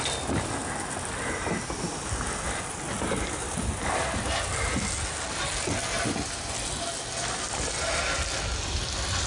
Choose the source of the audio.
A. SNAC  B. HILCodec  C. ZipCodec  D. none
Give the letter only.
D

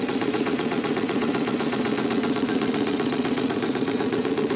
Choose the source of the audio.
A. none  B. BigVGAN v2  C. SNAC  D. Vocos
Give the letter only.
D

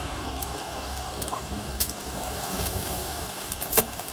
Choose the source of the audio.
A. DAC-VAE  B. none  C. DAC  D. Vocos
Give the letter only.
C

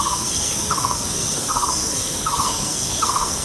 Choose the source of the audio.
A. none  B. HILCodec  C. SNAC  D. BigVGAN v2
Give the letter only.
C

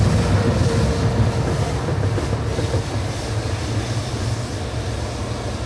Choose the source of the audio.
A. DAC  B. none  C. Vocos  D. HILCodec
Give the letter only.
B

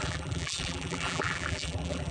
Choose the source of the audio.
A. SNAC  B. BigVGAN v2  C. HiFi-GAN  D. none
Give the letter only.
B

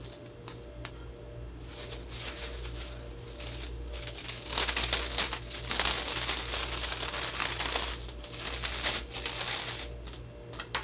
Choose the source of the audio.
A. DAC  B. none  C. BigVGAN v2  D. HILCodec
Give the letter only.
B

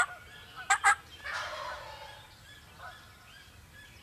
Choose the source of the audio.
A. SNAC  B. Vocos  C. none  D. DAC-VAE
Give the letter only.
C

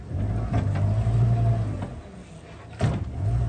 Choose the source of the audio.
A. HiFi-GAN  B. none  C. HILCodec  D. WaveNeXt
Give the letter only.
B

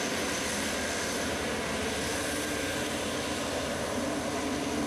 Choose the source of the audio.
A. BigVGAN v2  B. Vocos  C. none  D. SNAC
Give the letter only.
C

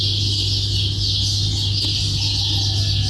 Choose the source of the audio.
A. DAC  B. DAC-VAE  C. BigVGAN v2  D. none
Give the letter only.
D